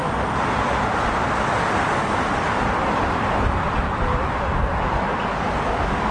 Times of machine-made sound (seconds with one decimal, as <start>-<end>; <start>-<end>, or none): none